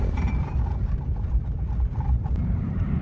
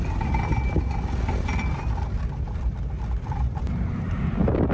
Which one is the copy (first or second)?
first